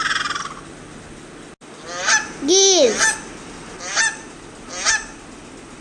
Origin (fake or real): real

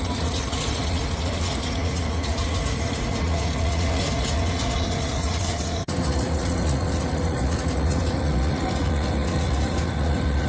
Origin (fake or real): fake